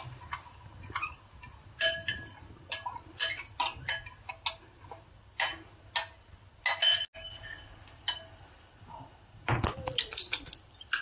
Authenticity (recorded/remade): recorded